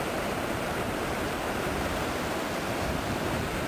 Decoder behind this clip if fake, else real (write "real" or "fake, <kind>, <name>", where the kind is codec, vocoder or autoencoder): fake, vocoder, BigVGAN v2